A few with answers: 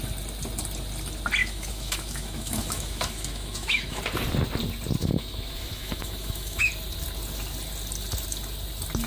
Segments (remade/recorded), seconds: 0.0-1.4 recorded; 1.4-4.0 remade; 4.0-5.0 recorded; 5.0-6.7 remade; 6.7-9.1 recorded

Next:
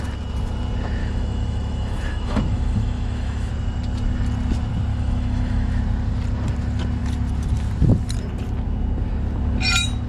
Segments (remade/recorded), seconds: 0.0-1.0 recorded; 1.0-3.5 remade; 3.5-4.9 recorded; 4.9-5.8 remade; 5.8-10.1 recorded

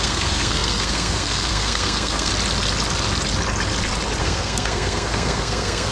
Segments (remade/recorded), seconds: 0.0-2.3 remade; 2.3-4.2 recorded; 4.2-5.9 remade

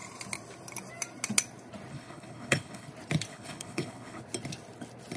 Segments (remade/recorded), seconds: 0.0-1.9 recorded; 1.9-2.9 remade; 2.9-3.3 recorded; 3.3-4.2 remade; 4.2-5.2 recorded

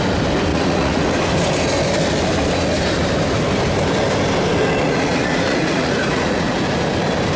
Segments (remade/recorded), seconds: 0.0-0.5 recorded; 0.5-1.2 remade; 1.2-4.8 recorded; 4.8-6.5 remade; 6.5-7.4 recorded

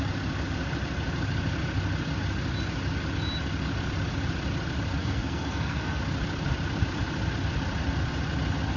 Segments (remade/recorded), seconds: 0.0-5.0 recorded; 5.0-6.0 remade; 6.0-8.8 recorded